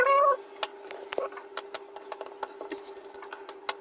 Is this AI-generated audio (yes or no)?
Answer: no